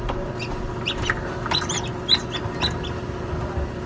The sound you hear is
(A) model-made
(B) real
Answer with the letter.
B